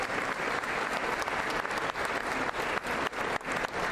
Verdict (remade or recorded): recorded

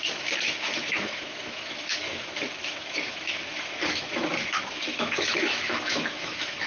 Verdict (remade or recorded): remade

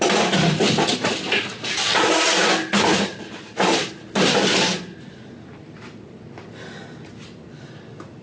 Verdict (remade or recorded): recorded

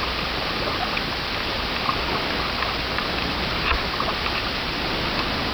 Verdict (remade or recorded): recorded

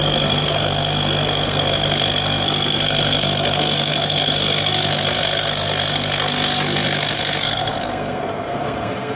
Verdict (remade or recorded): remade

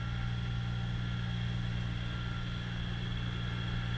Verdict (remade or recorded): recorded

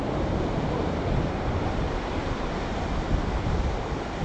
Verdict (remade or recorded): recorded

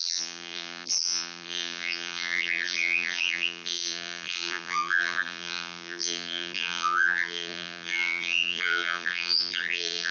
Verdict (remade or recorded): remade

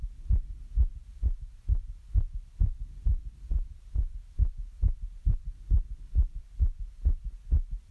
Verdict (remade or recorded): recorded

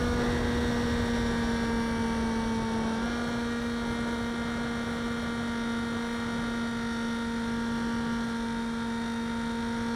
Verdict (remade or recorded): recorded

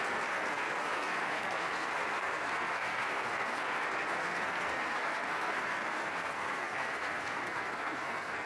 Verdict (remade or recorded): remade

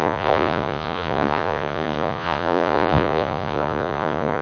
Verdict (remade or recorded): remade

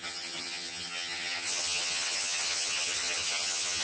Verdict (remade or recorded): remade